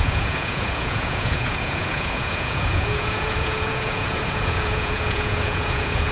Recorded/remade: remade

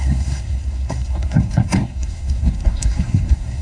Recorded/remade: remade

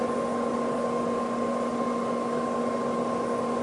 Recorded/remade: recorded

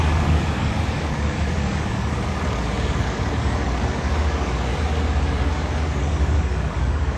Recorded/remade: remade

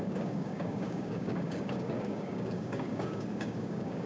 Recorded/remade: remade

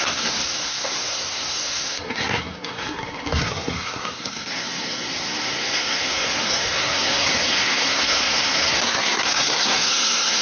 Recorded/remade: remade